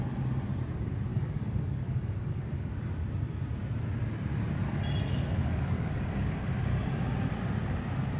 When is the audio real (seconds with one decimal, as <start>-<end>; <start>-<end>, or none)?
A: 0.0-1.1; 2.7-5.1; 6.5-8.2